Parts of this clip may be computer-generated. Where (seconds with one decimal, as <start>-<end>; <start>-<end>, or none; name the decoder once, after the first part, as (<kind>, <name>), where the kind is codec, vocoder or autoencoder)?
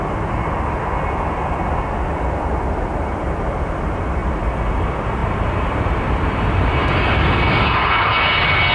none